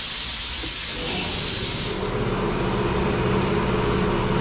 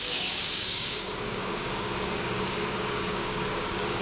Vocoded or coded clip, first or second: second